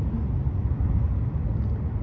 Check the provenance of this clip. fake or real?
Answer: real